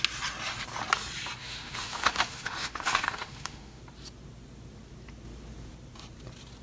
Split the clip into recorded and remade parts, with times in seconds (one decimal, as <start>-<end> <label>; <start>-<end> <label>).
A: 0.0-1.4 recorded; 1.4-3.8 remade; 3.8-6.6 recorded